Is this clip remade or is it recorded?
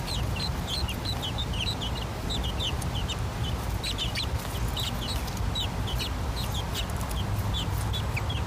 recorded